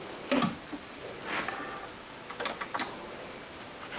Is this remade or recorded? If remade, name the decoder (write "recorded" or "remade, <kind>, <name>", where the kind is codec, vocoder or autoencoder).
recorded